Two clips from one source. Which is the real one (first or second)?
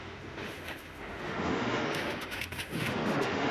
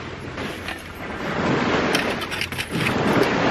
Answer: second